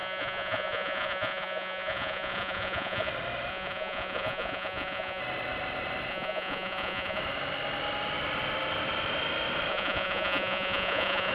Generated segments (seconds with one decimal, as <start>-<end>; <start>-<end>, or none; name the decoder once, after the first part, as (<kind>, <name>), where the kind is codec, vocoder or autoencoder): 0.0-3.1 (vocoder, Vocos); 3.5-5.2; 6.1-7.2; 9.7-11.3